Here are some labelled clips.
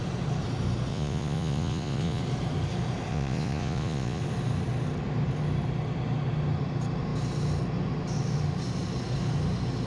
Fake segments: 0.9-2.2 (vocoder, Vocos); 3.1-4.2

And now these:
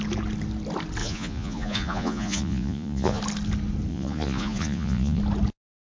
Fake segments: 1.0-3.2 (vocoder, Vocos); 3.9-5.2

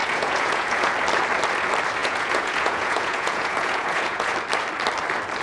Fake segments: 0.0-0.9 (vocoder, Vocos); 2.0-4.3